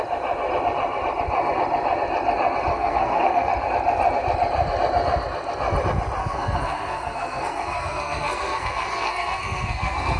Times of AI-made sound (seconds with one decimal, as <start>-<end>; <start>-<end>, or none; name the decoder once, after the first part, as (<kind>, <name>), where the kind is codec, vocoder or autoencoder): 2.7-3.5 (codec, SNAC); 6.2-10.2